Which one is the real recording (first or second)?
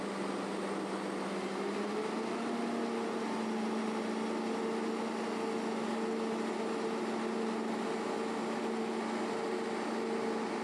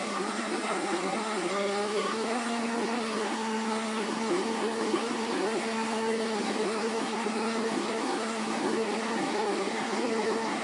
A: first